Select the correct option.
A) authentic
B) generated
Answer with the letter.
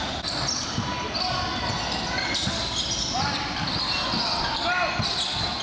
A